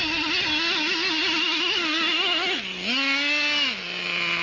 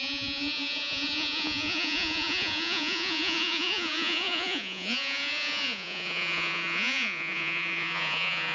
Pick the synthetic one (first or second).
second